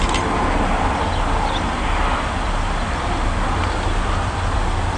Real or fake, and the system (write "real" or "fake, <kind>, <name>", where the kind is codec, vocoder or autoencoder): real